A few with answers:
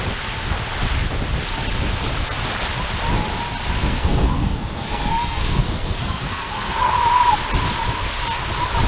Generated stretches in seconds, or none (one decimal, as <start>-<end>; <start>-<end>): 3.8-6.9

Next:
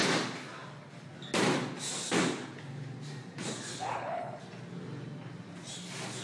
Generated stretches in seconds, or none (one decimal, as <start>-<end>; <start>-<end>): 3.7-4.4

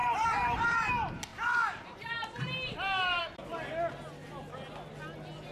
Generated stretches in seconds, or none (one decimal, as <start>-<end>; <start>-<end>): 0.0-0.9; 1.3-3.2

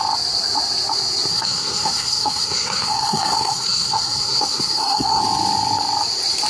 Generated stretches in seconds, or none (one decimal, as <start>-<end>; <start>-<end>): 1.3-5.2

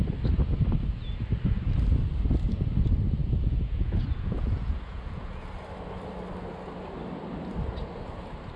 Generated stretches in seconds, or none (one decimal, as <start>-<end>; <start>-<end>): 3.2-5.5

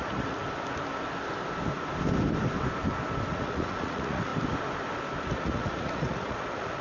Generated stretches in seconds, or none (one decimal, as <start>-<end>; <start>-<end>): 0.0-0.4; 3.3-4.3; 5.2-6.8